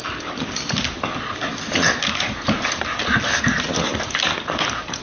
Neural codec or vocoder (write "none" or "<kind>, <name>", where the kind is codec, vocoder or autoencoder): none